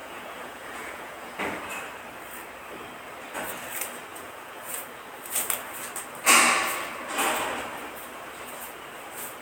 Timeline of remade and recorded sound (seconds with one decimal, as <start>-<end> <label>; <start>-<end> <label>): 0.0-1.4 remade; 1.4-4.1 recorded; 4.1-4.9 remade; 4.9-9.4 recorded